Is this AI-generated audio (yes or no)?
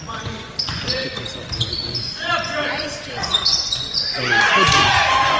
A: yes